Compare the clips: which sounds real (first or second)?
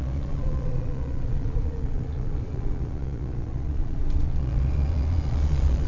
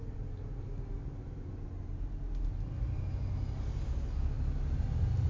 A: second